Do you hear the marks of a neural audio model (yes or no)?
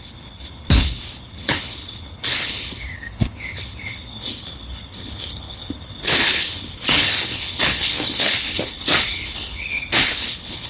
yes